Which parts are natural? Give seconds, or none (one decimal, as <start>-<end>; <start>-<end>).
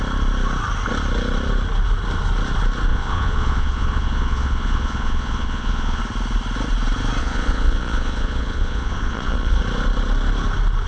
0.0-2.9; 6.0-7.2; 9.6-10.9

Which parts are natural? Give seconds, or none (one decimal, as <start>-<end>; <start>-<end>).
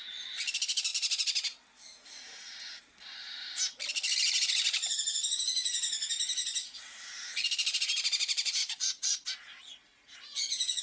0.0-8.6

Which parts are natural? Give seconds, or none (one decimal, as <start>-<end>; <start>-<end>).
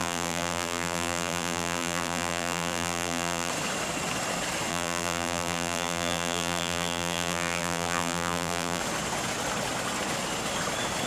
3.5-4.7; 8.8-11.1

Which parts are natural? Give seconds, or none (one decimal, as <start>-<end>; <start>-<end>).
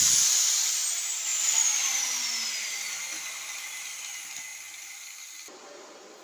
0.0-1.3; 2.0-6.2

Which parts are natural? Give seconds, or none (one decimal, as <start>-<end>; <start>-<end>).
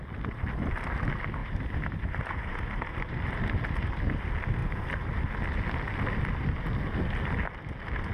0.0-1.4; 3.2-4.6; 5.3-8.1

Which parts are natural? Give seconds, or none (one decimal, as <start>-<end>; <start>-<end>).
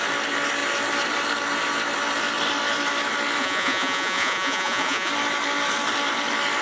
0.0-3.4; 5.1-6.6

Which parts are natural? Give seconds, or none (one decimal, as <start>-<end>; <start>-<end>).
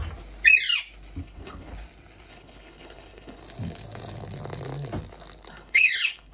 0.0-1.2; 1.7-2.3; 3.4-5.5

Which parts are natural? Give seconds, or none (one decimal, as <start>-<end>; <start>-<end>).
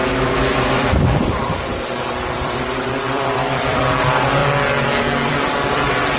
none